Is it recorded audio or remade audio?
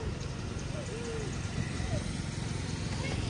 recorded